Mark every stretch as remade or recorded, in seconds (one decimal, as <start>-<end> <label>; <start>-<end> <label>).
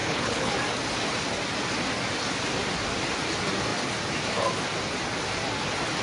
0.0-0.5 remade; 0.5-6.0 recorded